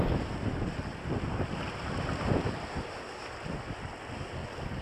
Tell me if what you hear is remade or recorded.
recorded